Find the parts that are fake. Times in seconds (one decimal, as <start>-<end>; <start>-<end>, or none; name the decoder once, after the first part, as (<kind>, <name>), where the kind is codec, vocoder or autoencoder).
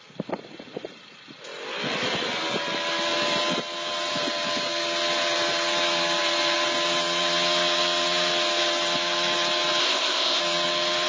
9.8-10.4 (codec, ZipCodec)